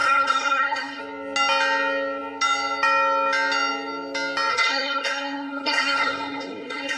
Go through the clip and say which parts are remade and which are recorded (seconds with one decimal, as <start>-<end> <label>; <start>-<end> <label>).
0.0-1.0 remade; 1.0-4.5 recorded; 4.5-7.0 remade